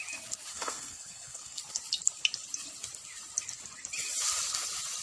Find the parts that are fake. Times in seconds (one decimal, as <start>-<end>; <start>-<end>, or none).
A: 0.5-1.6